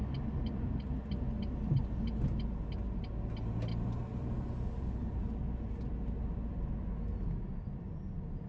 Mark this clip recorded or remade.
recorded